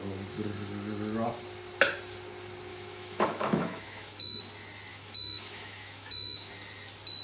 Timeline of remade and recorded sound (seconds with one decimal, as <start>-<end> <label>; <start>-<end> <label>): 0.0-2.7 recorded; 2.7-4.4 remade; 4.4-4.9 recorded; 4.9-6.5 remade; 6.5-7.2 recorded

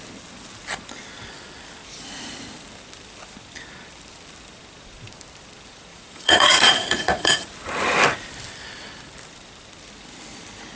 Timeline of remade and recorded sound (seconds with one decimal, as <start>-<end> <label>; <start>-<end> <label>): 0.0-5.9 recorded; 5.9-7.5 remade; 7.5-10.8 recorded